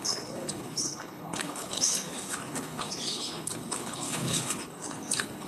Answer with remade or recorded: remade